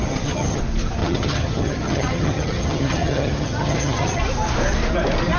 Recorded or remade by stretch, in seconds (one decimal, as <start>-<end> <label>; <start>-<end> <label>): 0.0-0.6 remade; 0.6-1.0 recorded; 1.0-4.2 remade; 4.2-5.4 recorded